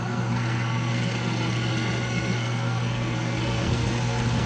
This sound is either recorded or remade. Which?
remade